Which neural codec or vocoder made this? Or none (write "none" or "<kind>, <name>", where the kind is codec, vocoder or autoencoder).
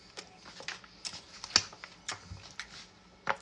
none